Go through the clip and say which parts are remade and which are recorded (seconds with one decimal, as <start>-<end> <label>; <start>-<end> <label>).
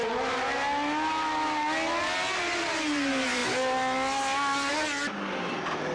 0.0-5.9 recorded